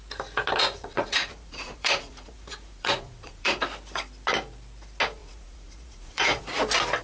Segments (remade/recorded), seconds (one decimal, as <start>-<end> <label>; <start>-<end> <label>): 0.0-0.6 recorded; 0.6-3.6 remade; 3.6-5.2 recorded; 5.2-6.4 remade; 6.4-7.0 recorded